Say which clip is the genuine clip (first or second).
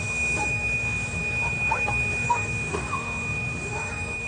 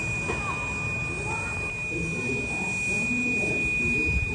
second